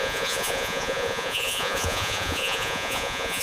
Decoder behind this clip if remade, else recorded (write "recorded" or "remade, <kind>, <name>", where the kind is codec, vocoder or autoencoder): remade, vocoder, Vocos